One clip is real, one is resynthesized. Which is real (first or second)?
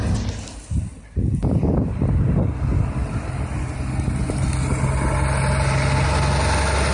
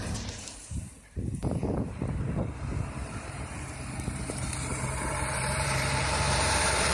first